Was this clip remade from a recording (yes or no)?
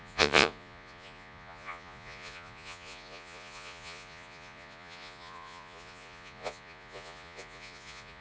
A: yes